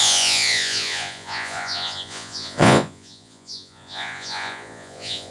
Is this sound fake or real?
fake